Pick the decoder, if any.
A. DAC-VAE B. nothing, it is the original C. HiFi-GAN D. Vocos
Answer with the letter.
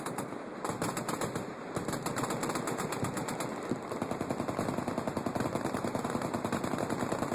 B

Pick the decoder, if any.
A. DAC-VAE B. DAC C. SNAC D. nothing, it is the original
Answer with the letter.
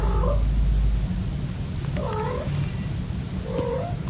D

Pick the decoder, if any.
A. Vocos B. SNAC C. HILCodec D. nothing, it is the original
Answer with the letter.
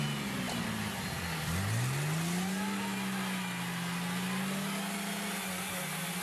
D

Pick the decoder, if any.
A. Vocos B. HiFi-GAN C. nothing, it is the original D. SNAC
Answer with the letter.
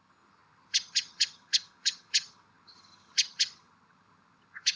B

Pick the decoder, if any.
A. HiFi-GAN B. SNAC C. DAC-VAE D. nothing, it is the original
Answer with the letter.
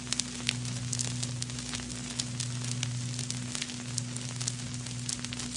D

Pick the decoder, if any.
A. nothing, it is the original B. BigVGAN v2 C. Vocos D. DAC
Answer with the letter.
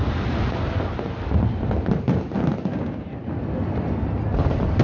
A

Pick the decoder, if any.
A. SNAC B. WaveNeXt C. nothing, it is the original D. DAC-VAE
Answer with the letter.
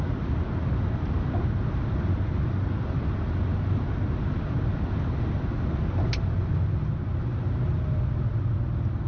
C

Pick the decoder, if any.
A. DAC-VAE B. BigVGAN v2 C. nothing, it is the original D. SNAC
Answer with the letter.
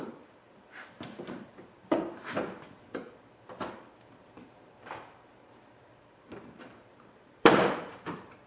B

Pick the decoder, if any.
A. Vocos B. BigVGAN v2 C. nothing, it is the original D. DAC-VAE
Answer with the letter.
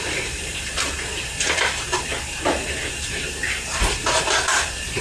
B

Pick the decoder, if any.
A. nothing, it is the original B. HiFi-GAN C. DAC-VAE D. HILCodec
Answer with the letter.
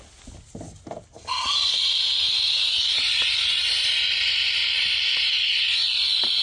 A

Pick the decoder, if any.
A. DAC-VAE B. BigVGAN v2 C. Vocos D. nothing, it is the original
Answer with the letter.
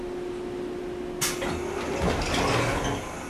D